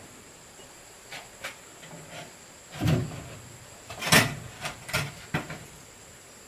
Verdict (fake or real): fake